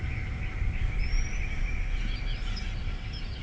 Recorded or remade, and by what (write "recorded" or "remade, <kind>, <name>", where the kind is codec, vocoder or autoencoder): recorded